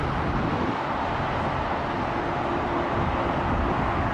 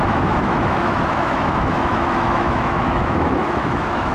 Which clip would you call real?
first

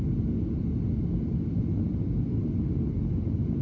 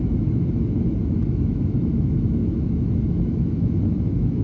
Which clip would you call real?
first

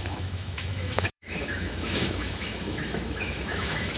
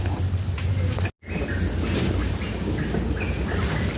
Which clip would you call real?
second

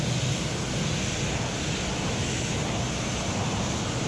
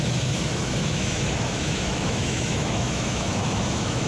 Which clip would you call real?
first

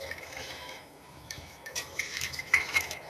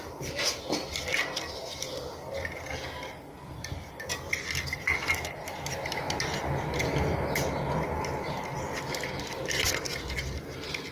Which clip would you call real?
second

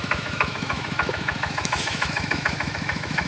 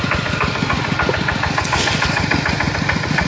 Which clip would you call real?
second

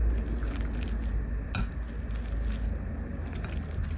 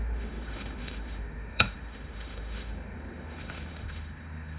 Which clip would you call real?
first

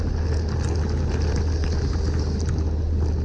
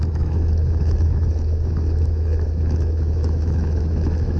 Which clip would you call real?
first